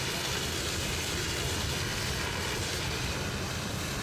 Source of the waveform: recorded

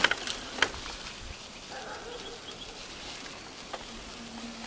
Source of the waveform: recorded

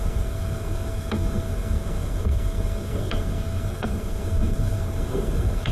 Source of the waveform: remade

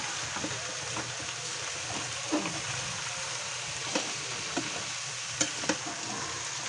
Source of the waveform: recorded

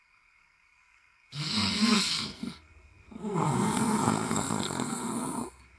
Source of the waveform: remade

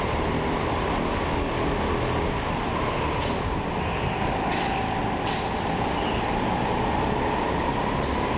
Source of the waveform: recorded